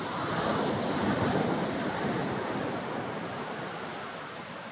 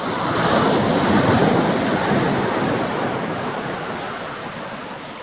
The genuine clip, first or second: second